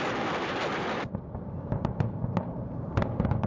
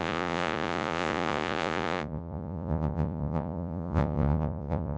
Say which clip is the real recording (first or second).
first